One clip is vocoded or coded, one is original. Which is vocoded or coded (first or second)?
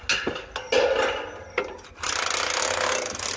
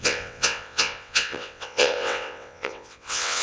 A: second